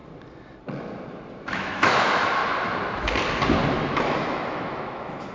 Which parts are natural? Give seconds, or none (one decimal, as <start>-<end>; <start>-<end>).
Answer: 0.0-1.4; 2.4-3.7